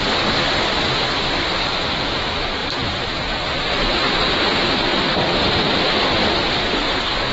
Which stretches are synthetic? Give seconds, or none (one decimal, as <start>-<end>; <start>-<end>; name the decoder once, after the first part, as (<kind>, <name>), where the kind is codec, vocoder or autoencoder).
2.6-3.9 (vocoder, BigVGAN v2); 4.9-6.2